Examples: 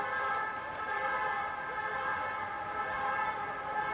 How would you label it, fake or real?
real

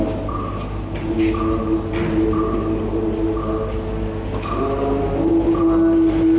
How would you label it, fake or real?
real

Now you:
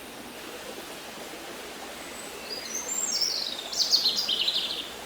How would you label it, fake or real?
real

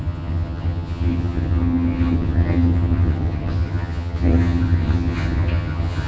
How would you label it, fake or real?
fake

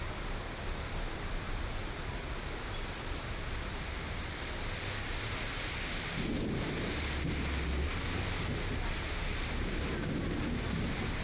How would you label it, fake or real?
real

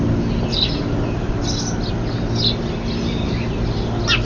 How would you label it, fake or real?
real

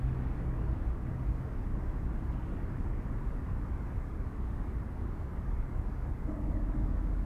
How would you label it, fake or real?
fake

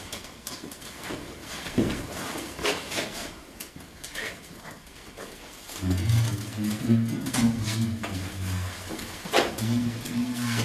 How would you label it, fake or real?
fake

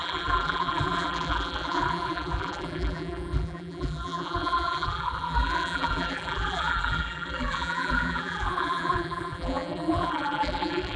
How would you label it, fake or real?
fake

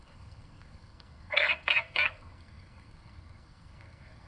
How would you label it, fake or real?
fake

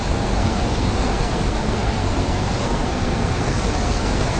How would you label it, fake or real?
fake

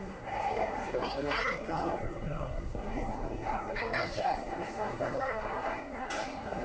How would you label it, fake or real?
fake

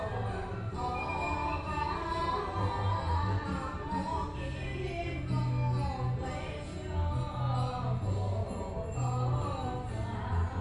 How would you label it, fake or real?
real